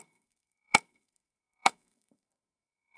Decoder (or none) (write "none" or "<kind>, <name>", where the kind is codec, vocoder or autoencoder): codec, SNAC